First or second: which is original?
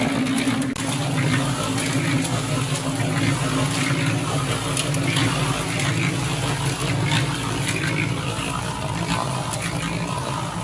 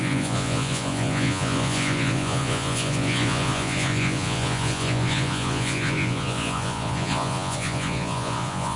first